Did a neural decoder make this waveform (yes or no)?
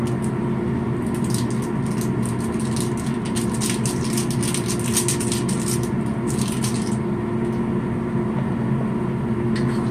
no